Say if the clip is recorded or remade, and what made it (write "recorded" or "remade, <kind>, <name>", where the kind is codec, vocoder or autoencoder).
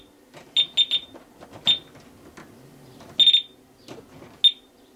recorded